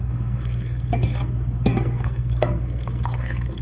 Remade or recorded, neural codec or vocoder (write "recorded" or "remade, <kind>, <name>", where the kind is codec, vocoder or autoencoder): remade, codec, SNAC